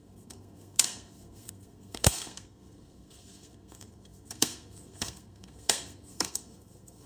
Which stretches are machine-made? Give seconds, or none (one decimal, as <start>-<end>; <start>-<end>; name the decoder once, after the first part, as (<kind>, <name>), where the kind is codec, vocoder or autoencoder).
0.0-7.1 (codec, SNAC)

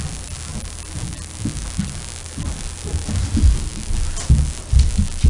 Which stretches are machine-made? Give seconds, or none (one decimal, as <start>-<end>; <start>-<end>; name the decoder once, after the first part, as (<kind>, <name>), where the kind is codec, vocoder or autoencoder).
none